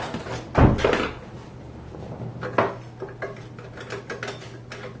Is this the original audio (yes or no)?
yes